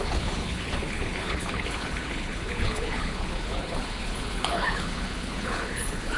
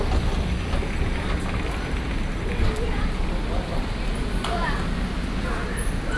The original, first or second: second